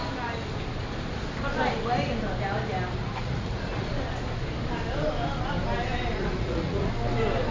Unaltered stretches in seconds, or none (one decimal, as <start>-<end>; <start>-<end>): 0.0-3.0; 3.9-6.2; 6.9-7.5